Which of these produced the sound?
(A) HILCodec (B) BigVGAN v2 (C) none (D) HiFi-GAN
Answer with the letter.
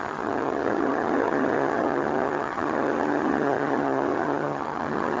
D